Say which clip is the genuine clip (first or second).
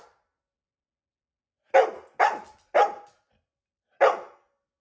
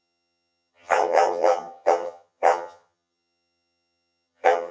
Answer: first